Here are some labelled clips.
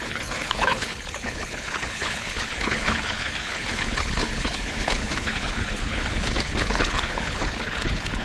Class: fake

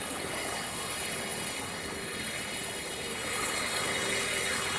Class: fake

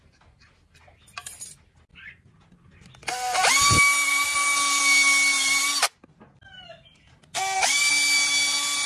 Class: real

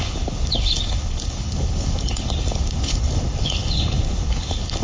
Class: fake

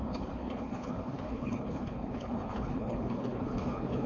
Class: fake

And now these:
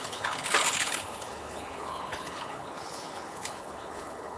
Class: fake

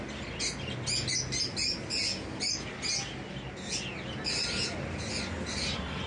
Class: real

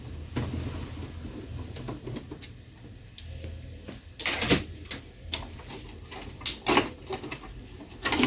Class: real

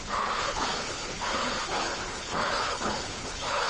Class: fake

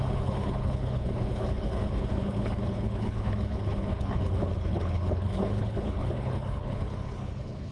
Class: fake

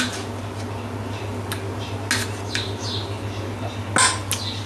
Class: real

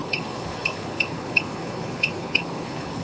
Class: fake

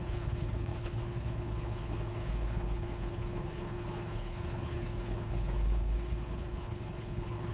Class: fake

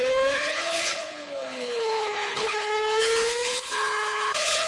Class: fake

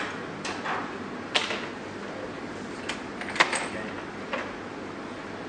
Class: real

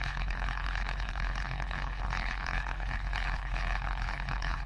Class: fake